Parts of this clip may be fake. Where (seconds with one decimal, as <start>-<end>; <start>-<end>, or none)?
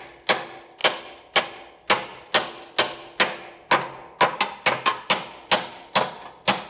none